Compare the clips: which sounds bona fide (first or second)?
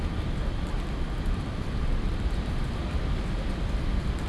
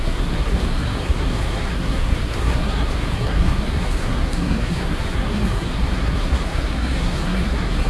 first